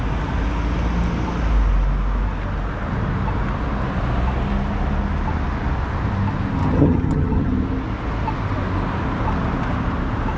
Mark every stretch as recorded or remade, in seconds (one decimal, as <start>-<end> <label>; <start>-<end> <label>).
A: 0.0-6.6 recorded; 6.6-7.5 remade; 7.5-10.4 recorded